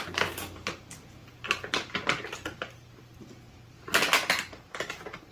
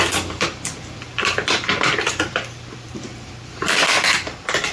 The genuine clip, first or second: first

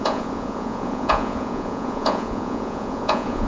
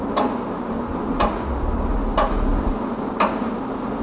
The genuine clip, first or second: second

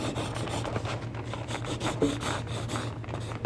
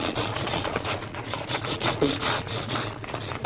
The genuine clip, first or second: first